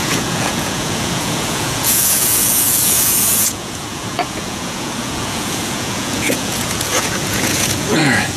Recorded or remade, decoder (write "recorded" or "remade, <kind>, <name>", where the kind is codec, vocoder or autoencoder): remade, vocoder, Vocos